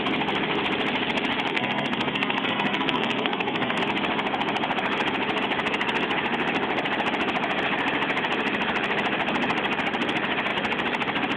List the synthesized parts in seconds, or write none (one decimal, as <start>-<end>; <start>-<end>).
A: 1.5-3.8